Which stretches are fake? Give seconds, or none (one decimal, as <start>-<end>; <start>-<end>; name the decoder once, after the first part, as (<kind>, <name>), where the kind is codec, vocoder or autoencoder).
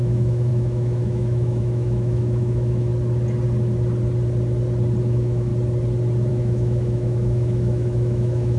0.0-2.9 (autoencoder, DAC-VAE); 5.0-5.5; 6.3-8.6